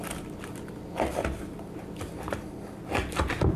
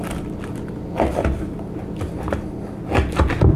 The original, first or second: second